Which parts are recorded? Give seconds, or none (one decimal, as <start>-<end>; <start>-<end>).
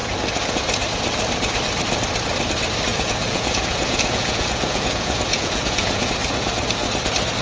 0.0-2.9; 6.1-7.4